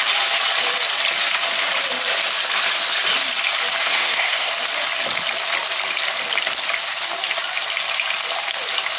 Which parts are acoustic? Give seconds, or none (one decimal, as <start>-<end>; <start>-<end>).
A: 0.0-3.8; 4.5-9.0